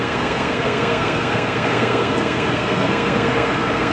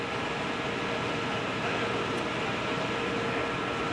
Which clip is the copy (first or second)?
first